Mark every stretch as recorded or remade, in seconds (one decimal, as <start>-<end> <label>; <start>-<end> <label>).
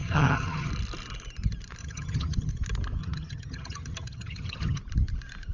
0.0-0.7 remade; 0.7-1.8 recorded; 1.8-2.5 remade; 2.5-3.0 recorded; 3.0-4.8 remade; 4.8-5.5 recorded